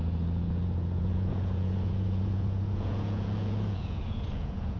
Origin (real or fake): fake